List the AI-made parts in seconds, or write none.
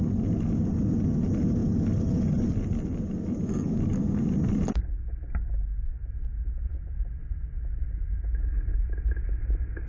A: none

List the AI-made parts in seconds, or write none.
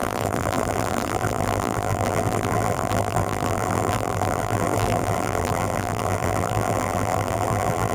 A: 0.0-7.9 (vocoder, BigVGAN v2)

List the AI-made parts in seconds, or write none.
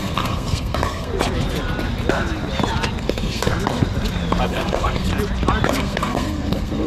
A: 0.0-1.1 (codec, SNAC); 3.0-3.5; 4.5-5.1; 5.7-6.9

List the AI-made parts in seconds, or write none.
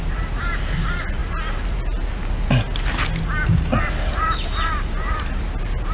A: none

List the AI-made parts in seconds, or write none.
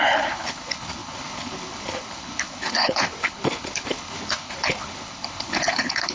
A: 0.0-6.1 (codec, HILCodec)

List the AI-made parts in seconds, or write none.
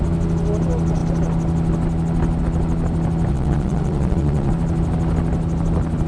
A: 3.3-4.5 (vocoder, Vocos)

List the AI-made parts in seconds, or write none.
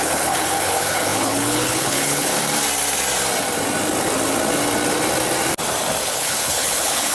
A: 0.0-2.3 (codec, HILCodec); 6.0-7.1